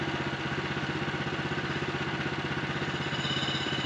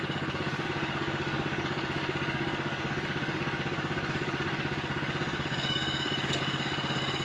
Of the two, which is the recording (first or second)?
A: first